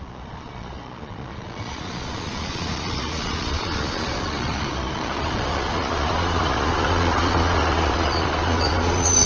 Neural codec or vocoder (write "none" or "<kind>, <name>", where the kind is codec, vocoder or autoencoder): vocoder, Vocos